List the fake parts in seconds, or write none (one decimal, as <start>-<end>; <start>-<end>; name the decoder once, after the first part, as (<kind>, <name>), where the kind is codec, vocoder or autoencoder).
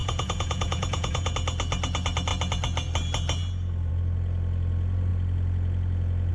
0.0-1.3 (vocoder, Vocos)